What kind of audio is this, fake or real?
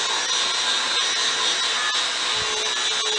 real